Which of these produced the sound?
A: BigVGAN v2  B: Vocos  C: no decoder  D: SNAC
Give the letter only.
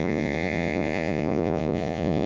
B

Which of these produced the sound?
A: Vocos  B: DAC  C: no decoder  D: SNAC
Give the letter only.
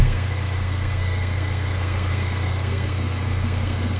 D